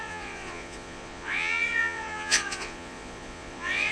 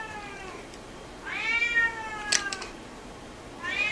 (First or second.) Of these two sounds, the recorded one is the second